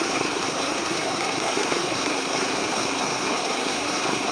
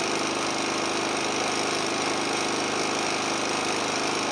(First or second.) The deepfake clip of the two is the first